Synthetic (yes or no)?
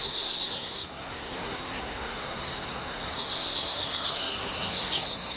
yes